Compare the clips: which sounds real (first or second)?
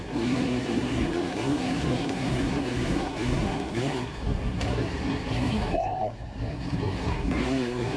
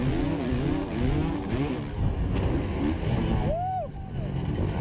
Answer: second